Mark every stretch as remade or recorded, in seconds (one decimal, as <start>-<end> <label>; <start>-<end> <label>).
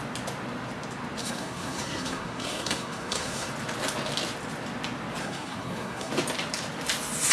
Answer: 0.0-1.2 recorded; 1.2-3.5 remade; 3.5-5.2 recorded; 5.2-6.1 remade; 6.1-7.3 recorded